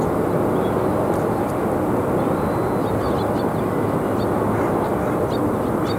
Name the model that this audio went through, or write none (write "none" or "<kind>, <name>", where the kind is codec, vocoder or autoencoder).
none